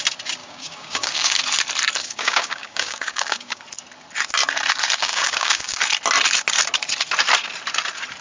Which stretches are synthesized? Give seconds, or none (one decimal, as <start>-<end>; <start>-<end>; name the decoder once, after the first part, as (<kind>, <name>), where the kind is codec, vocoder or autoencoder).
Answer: 0.4-1.4 (codec, DAC); 2.0-3.6; 5.0-5.8